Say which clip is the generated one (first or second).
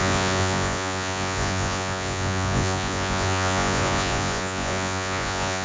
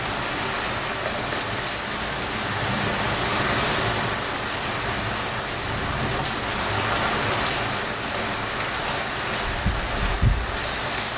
first